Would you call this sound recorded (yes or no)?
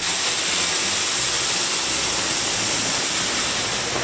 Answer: yes